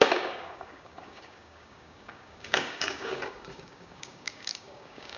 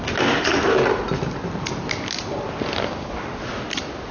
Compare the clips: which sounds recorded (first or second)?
second